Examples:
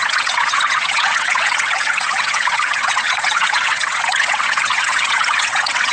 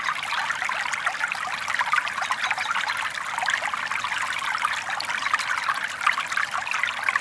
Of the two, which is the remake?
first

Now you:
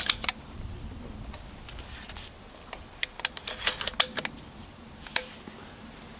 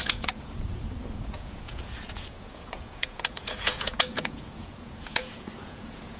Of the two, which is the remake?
second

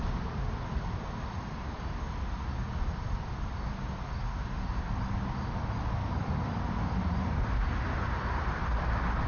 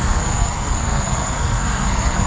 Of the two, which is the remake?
second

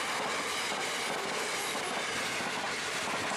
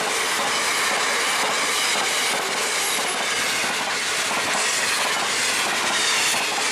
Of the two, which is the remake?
first